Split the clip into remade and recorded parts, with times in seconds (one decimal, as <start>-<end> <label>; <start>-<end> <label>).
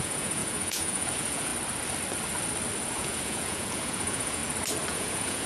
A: 0.0-1.5 remade; 1.5-2.9 recorded; 2.9-4.4 remade; 4.4-4.9 recorded; 4.9-5.5 remade